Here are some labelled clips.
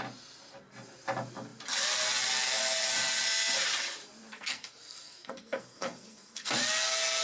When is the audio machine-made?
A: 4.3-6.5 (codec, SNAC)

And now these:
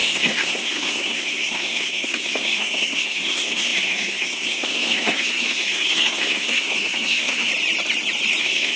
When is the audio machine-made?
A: 0.0-7.5 (codec, SNAC); 8.4-8.8